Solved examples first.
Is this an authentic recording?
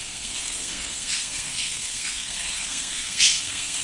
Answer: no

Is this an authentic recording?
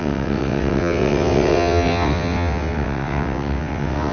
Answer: no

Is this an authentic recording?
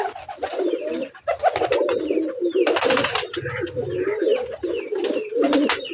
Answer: yes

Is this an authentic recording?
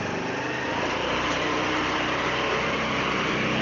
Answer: yes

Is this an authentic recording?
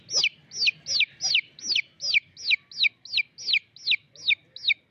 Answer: yes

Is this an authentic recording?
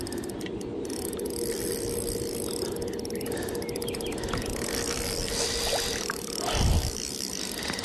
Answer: yes